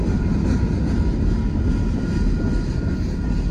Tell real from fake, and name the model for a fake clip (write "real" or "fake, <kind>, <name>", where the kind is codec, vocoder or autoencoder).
real